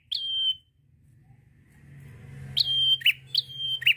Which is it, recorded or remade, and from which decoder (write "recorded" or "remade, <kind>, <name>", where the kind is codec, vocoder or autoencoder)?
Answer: recorded